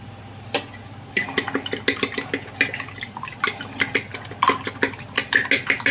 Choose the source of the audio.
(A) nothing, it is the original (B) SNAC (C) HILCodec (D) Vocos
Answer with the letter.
A